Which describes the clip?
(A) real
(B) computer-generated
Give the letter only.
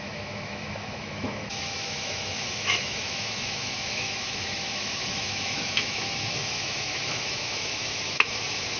B